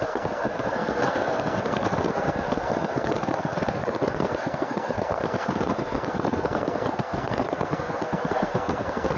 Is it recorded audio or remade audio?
remade